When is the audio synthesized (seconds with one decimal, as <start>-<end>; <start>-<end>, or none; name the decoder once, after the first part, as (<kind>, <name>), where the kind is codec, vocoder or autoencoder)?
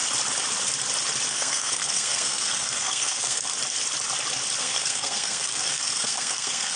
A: 1.3-3.5 (codec, SNAC); 4.6-6.8